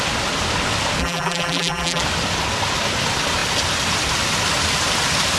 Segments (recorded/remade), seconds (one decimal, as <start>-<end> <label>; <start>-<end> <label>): 0.0-1.0 recorded; 1.0-2.0 remade; 2.0-5.4 recorded